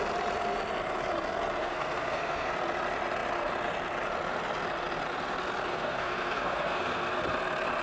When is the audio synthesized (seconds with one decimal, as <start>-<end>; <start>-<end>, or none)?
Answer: 1.6-2.5; 5.7-7.2